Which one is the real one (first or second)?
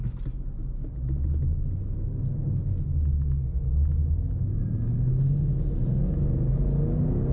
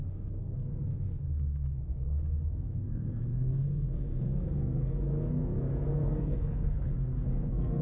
first